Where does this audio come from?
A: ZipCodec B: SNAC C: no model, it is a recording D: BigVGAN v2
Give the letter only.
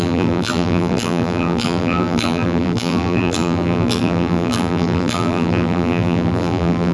D